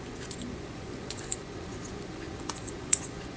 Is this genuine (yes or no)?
no